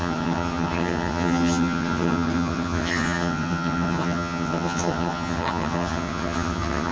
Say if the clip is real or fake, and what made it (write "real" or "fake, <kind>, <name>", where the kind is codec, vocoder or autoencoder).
fake, vocoder, HiFi-GAN